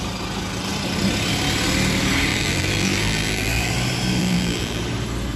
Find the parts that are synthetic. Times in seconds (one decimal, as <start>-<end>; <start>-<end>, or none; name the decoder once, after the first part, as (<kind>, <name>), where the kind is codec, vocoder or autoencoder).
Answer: 2.3-3.7 (vocoder, BigVGAN v2); 4.2-4.8